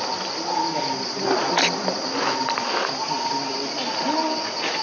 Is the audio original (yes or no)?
yes